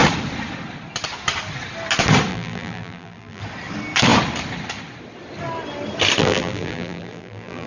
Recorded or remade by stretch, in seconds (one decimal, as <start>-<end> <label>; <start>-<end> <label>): 0.0-2.3 recorded; 2.3-3.4 remade; 3.4-6.2 recorded; 6.2-7.7 remade

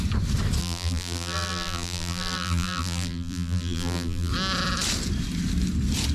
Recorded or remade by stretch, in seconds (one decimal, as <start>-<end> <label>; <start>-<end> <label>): 0.0-0.6 recorded; 0.6-4.3 remade; 4.3-6.1 recorded

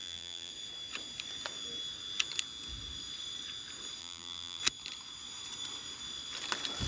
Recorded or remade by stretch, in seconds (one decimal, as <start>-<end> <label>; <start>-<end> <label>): 0.0-0.5 remade; 0.5-4.0 recorded; 4.0-4.6 remade; 4.6-6.9 recorded

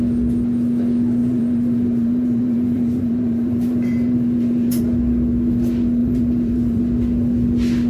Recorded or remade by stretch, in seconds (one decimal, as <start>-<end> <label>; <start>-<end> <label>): 0.0-1.2 recorded; 1.2-4.8 remade; 4.8-6.0 recorded; 6.0-6.8 remade; 6.8-7.9 recorded

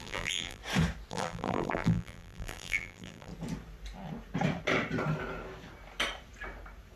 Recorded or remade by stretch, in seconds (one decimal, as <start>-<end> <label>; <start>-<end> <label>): 0.0-0.6 remade; 0.6-1.1 recorded; 1.1-3.3 remade; 3.3-7.0 recorded